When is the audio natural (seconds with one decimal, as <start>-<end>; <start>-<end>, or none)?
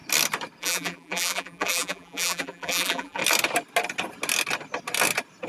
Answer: 0.0-0.6; 3.2-5.5